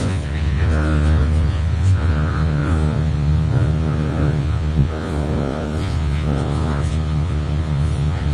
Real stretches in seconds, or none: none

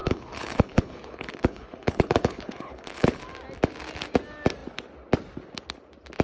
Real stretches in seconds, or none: 3.2-6.2

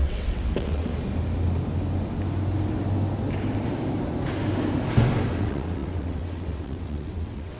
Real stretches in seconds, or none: 0.9-5.3